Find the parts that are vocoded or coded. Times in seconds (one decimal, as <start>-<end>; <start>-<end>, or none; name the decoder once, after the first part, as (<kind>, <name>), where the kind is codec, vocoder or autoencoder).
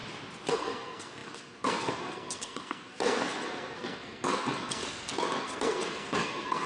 0.5-6.7 (codec, SNAC)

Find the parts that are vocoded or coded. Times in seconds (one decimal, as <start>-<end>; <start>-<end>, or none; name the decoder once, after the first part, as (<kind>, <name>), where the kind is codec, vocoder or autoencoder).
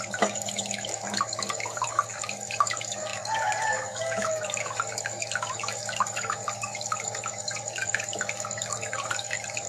0.0-9.7 (codec, DAC)